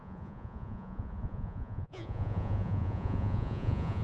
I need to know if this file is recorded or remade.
remade